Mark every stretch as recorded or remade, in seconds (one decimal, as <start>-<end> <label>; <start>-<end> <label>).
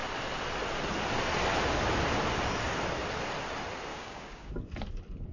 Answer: 0.0-3.9 recorded; 3.9-4.5 remade; 4.5-5.3 recorded